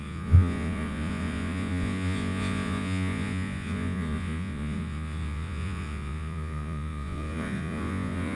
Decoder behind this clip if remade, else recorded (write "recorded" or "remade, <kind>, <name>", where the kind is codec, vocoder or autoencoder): remade, vocoder, Vocos